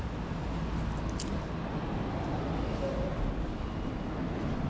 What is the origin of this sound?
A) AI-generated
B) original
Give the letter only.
B